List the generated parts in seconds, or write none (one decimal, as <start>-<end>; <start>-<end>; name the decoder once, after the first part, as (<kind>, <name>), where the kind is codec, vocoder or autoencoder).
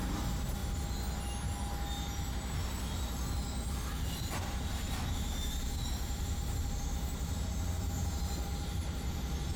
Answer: 0.0-0.6 (vocoder, BigVGAN v2); 4.4-9.6